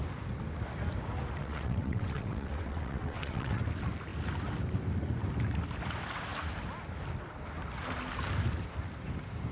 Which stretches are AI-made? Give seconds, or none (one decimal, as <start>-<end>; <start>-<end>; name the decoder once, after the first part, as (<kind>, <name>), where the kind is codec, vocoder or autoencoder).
1.4-3.6 (vocoder, WaveNeXt)